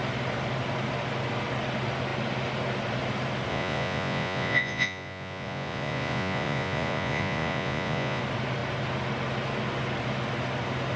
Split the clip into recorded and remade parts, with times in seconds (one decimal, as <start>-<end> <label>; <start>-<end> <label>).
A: 0.0-3.5 recorded; 3.5-8.2 remade; 8.2-11.0 recorded